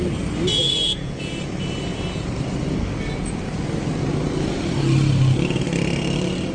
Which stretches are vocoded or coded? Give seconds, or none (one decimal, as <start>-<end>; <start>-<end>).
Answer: 0.6-1.3